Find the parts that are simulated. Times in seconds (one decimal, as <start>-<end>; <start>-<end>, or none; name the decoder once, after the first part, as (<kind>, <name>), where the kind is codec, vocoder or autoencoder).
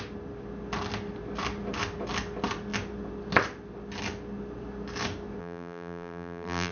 5.4-6.7 (vocoder, BigVGAN v2)